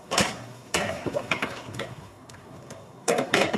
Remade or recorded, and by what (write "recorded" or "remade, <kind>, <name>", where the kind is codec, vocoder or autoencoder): remade, codec, SNAC